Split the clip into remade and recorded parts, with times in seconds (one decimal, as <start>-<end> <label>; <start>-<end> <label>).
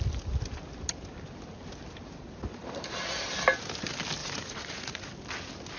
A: 0.0-4.2 recorded; 4.2-5.1 remade; 5.1-5.8 recorded